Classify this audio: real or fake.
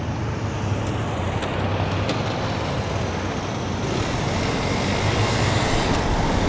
real